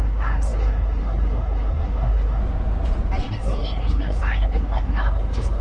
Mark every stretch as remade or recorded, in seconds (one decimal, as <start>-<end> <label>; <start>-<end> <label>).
0.0-2.4 remade; 2.4-3.2 recorded; 3.2-5.6 remade